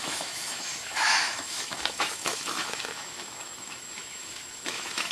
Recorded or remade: remade